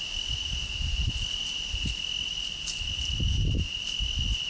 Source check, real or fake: real